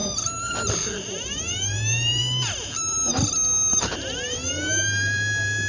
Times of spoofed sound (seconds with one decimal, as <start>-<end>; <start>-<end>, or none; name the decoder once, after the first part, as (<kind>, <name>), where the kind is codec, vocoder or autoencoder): 0.0-2.2 (vocoder, BigVGAN v2); 3.7-5.7